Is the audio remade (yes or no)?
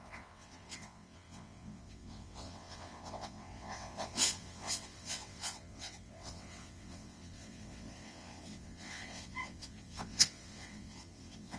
yes